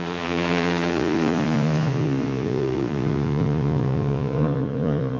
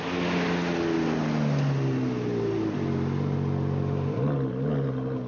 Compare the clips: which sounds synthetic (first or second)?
first